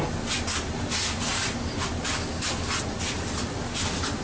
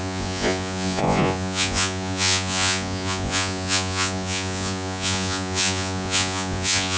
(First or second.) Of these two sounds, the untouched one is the first